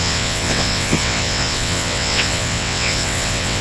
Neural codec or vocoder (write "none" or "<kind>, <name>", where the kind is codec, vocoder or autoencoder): vocoder, WaveNeXt